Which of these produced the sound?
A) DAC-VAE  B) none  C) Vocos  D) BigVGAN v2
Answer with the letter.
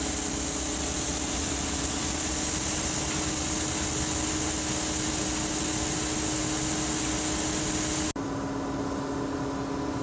B